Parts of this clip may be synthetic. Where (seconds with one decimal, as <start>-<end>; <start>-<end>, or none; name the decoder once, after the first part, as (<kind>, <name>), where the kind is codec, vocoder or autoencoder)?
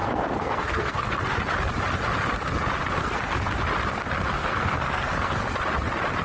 0.0-1.4 (codec, SNAC); 3.0-3.5; 4.4-5.4